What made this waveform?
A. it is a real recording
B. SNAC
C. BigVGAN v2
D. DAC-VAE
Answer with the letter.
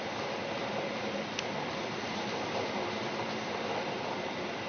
A